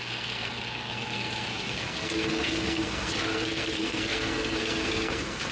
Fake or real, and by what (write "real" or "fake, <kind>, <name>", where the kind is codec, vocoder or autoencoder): fake, codec, SNAC